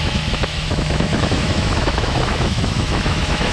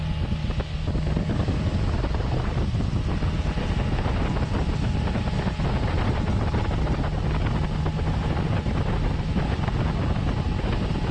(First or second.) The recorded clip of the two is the second